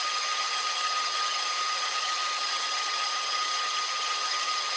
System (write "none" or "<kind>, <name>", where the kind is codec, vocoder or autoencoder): vocoder, HiFi-GAN